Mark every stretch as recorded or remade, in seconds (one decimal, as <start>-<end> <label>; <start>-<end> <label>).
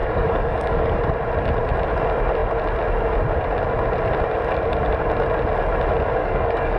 0.0-1.0 remade; 1.0-6.2 recorded; 6.2-6.8 remade